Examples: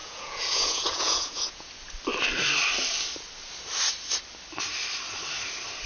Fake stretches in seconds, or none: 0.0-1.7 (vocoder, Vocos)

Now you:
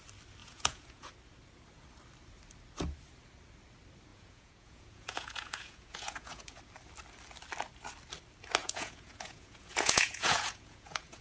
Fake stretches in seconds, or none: 0.4-1.1 (vocoder, Vocos); 4.1-6.6; 8.6-11.2